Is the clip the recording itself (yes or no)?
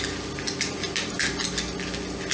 yes